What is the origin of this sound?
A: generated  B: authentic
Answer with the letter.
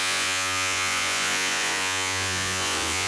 A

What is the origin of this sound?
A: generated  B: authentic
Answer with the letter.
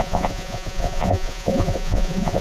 A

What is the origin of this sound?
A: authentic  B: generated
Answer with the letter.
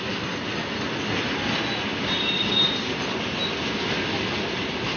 A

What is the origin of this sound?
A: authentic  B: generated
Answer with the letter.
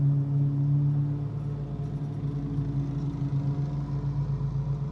A